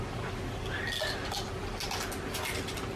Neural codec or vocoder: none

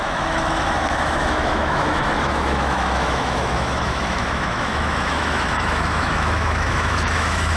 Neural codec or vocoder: autoencoder, DAC-VAE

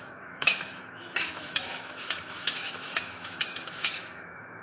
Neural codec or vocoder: autoencoder, DAC-VAE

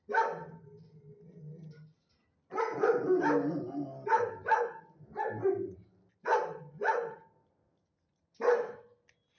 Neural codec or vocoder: none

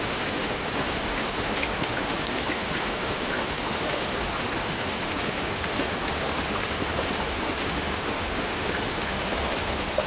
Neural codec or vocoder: autoencoder, DAC-VAE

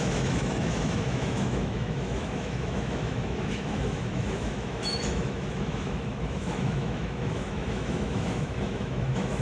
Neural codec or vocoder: autoencoder, DAC-VAE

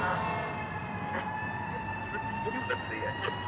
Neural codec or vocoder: none